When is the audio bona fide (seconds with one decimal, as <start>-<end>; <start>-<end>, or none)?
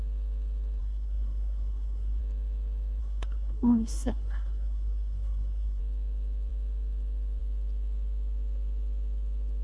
0.0-0.8; 2.2-3.0; 5.8-9.6